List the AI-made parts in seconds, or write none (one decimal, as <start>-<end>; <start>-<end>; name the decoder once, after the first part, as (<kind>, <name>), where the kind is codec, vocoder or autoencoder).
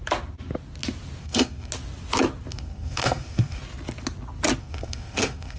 1.2-1.7 (codec, SNAC); 2.5-3.6; 4.6-5.6